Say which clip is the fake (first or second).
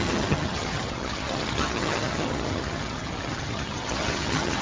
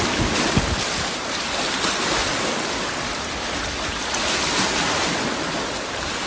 first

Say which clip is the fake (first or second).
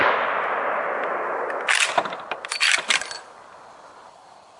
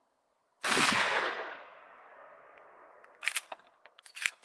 second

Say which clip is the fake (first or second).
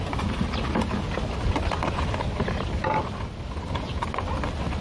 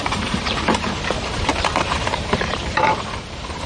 second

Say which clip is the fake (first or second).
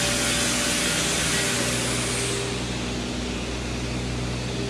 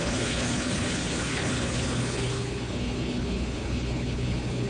second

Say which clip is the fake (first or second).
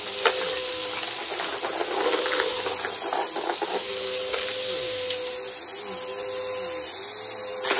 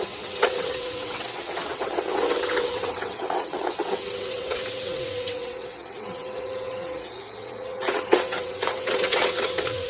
second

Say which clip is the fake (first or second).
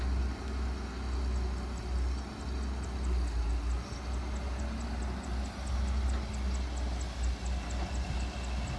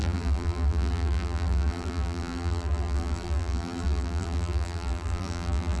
second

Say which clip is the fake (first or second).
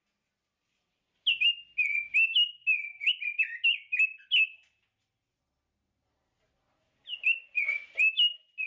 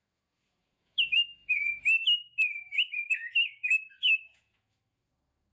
second